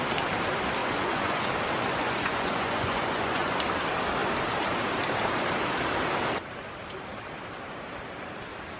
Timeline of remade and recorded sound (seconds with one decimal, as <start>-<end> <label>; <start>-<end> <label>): 0.0-0.8 recorded; 0.8-1.5 remade; 1.5-1.9 recorded; 1.9-3.6 remade; 3.6-8.8 recorded